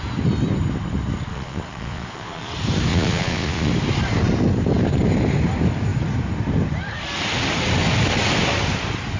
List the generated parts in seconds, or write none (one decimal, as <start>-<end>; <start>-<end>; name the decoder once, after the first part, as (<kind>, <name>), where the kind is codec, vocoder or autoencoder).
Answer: 1.3-2.5 (vocoder, Vocos); 2.9-3.7